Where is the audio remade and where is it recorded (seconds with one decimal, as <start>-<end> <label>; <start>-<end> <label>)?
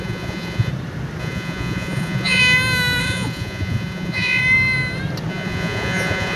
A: 0.0-0.7 remade; 0.7-1.2 recorded; 1.2-2.4 remade; 2.4-3.0 recorded; 3.0-4.4 remade; 4.4-5.3 recorded; 5.3-6.4 remade